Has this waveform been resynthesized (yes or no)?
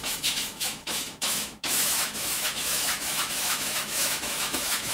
yes